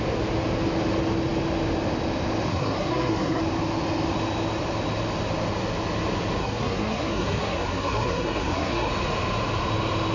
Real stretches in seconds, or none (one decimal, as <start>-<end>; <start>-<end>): 0.0-2.5; 3.4-6.4; 8.9-10.1